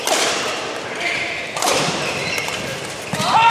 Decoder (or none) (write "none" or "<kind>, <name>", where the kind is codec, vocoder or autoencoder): none